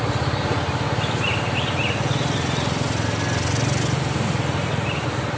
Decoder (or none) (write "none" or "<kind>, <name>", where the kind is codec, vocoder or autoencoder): none